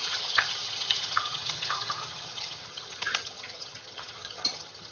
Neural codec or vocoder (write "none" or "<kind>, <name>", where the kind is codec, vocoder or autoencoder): vocoder, HiFi-GAN